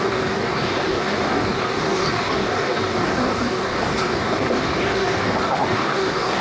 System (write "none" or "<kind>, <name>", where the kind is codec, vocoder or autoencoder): codec, DAC